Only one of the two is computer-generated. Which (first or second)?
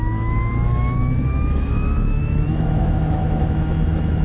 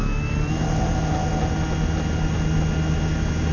first